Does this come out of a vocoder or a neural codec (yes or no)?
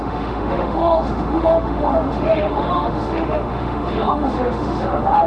yes